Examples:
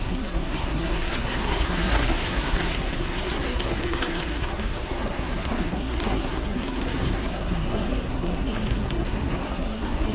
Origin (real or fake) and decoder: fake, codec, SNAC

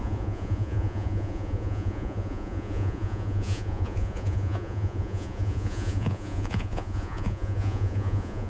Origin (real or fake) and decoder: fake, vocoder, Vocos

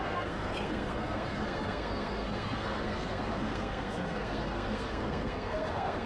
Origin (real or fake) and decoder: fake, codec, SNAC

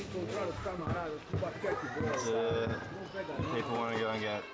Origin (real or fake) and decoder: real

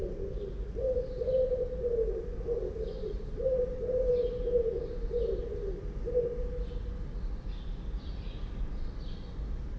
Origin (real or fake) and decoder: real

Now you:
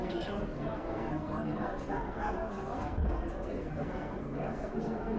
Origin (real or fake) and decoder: fake, codec, SNAC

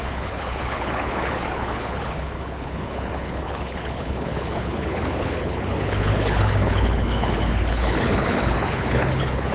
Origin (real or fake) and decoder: fake, codec, HILCodec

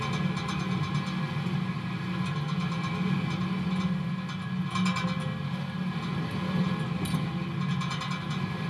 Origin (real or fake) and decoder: real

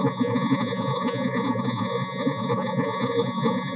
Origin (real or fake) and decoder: fake, vocoder, Vocos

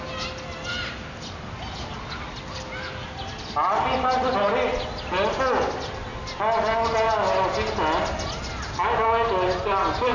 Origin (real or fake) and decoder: real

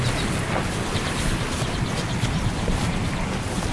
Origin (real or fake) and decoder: real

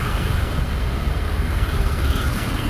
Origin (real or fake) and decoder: fake, codec, SNAC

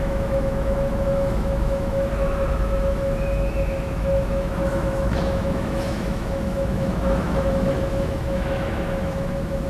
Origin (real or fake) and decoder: fake, autoencoder, DAC-VAE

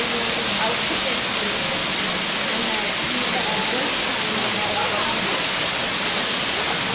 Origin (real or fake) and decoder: real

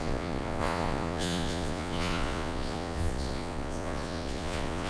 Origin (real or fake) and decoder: fake, vocoder, Vocos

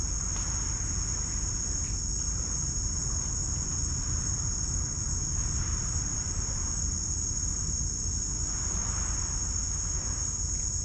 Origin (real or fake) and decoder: real